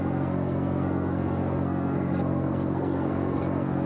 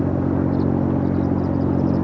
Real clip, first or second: second